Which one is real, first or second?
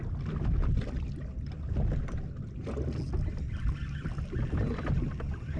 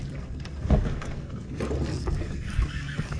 first